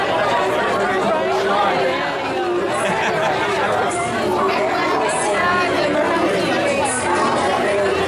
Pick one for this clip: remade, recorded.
recorded